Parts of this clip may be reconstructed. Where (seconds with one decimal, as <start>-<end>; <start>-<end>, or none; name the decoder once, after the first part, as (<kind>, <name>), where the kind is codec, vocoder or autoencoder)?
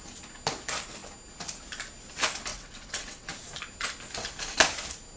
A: 2.5-3.3 (vocoder, WaveNeXt)